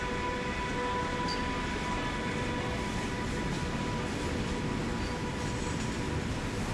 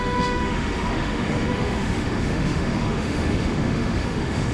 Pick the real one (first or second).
first